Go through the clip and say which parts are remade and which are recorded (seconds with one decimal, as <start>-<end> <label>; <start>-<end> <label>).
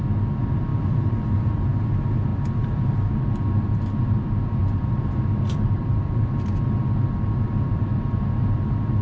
0.0-0.7 recorded; 0.7-1.5 remade; 1.5-2.3 recorded; 2.3-3.0 remade; 3.0-4.6 recorded; 4.6-6.8 remade; 6.8-9.0 recorded